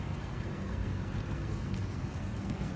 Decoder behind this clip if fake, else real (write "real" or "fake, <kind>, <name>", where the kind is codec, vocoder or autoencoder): fake, codec, SNAC